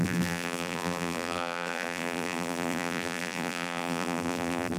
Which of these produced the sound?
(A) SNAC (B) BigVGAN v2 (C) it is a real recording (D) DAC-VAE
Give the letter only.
B